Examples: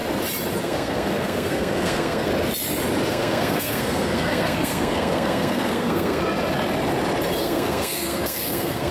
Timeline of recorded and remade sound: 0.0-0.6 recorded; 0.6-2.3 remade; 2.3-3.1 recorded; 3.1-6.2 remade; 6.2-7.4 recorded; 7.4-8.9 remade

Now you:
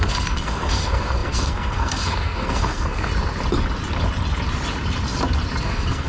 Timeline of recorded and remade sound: 0.0-3.1 remade; 3.1-5.6 recorded; 5.6-6.1 remade

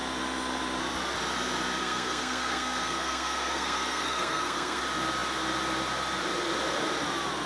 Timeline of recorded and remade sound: 0.0-1.8 recorded; 1.8-4.8 remade; 4.8-7.5 recorded

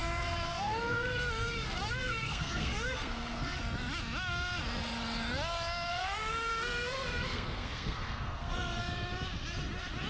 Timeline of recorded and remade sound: 0.0-3.6 remade; 3.6-5.9 recorded; 5.9-8.8 remade; 8.8-10.1 recorded